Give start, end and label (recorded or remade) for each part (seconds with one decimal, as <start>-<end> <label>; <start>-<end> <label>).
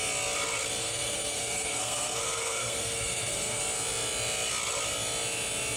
0.0-0.8 recorded; 0.8-3.6 remade; 3.6-5.8 recorded